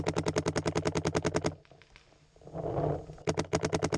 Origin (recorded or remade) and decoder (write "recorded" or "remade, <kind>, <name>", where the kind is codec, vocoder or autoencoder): recorded